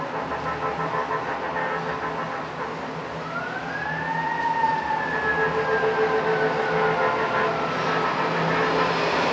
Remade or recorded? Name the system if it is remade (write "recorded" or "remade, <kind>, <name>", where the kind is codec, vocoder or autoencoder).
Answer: recorded